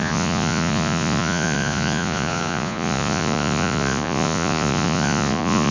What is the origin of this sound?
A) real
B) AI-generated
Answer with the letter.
B